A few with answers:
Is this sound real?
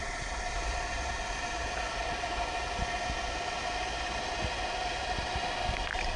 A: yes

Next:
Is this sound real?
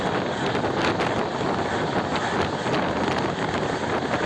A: yes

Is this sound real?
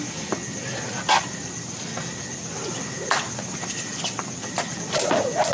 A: yes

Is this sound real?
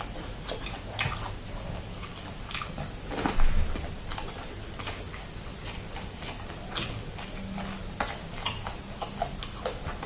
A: yes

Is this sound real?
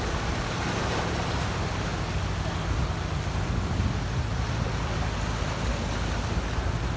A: yes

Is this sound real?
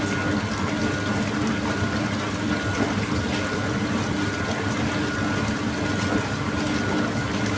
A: yes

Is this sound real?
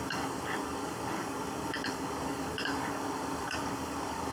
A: no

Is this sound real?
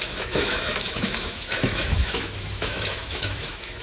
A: no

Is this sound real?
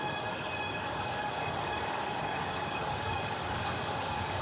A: no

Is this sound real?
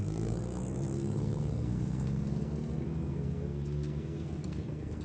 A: no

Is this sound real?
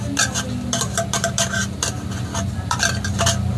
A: no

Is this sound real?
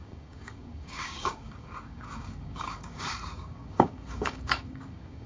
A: no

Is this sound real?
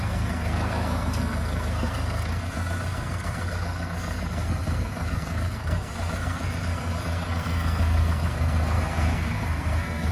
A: no